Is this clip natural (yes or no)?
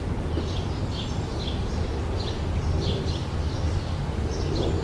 yes